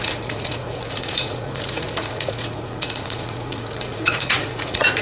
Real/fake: fake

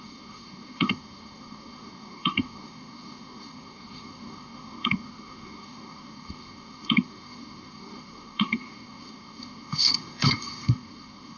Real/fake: fake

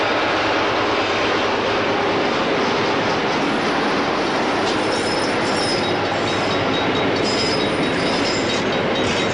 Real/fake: real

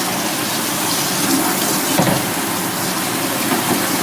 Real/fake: real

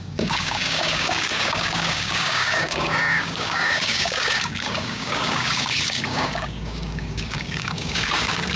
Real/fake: fake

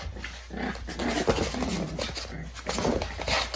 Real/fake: real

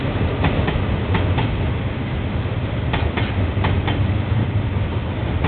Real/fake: real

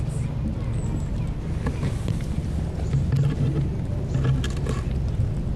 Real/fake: real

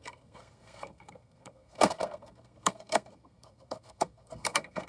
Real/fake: fake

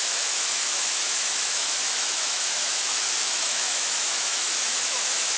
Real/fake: fake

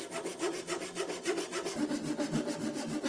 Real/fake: real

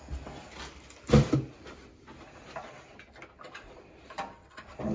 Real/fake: real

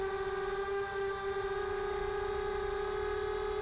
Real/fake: real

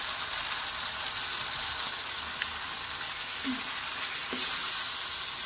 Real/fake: real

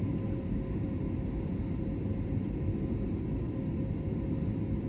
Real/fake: real